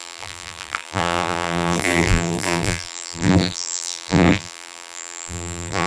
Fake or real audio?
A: fake